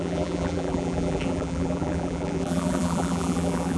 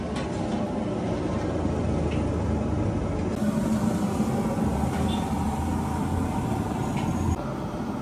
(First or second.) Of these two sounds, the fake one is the first